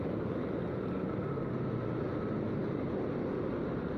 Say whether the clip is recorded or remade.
recorded